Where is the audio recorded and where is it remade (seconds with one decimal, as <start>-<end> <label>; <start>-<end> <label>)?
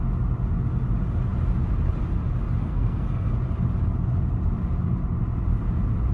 0.0-2.6 recorded; 2.6-3.3 remade; 3.3-6.1 recorded